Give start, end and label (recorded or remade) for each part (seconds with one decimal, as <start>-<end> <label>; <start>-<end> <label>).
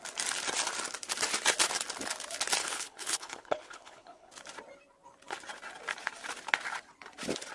0.0-2.6 recorded; 2.6-4.3 remade; 4.3-7.5 recorded